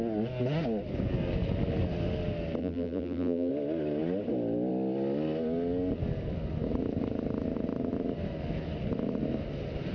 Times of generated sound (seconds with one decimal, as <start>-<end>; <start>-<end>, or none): 2.6-3.5